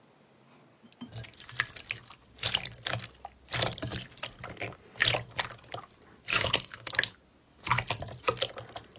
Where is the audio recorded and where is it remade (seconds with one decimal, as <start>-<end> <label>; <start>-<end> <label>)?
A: 0.0-6.3 recorded; 6.3-6.9 remade; 6.9-9.0 recorded